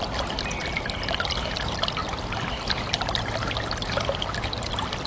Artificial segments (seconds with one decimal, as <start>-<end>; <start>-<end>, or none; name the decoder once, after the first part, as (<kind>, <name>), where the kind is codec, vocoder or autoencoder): none